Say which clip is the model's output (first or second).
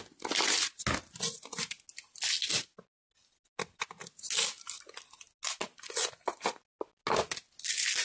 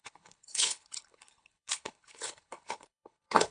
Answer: second